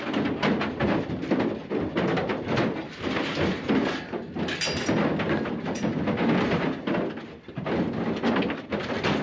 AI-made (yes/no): no